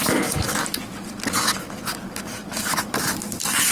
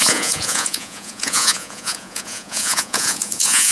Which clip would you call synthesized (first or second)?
second